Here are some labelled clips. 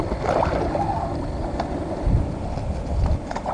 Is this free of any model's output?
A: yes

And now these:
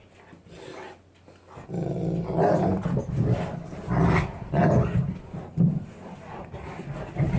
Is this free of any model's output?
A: yes